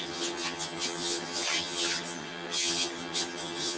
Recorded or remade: remade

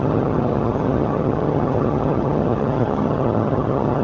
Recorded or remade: remade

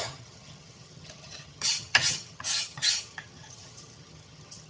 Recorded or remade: remade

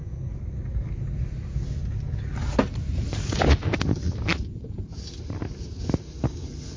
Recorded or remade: recorded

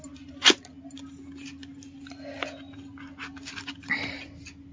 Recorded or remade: recorded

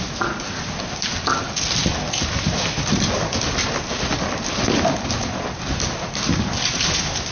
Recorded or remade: recorded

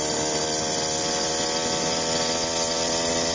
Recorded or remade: recorded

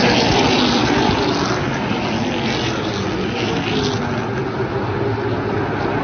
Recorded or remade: recorded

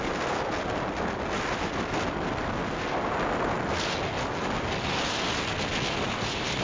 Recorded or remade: recorded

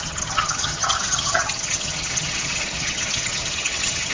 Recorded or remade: remade